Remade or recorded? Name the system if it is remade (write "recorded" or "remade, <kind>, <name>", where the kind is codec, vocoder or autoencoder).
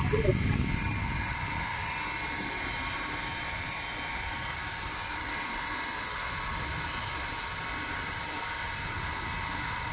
recorded